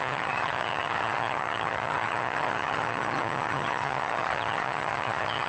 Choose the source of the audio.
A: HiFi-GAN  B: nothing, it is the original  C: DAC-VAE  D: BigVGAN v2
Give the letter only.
A